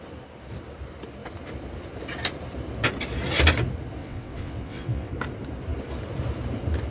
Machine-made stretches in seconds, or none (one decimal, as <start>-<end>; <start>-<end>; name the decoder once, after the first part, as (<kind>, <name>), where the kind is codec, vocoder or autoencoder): 4.0-5.1 (vocoder, WaveNeXt)